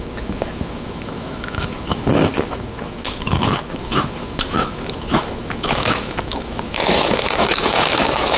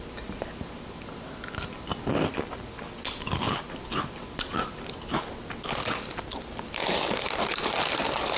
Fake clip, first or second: first